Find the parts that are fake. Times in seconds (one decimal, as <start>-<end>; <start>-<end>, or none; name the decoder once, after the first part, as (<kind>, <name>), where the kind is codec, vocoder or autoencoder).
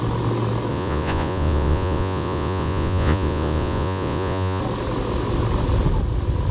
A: 0.7-4.6 (vocoder, Vocos)